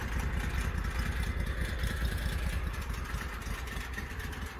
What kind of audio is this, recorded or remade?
recorded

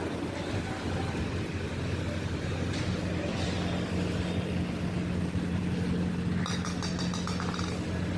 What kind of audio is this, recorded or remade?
recorded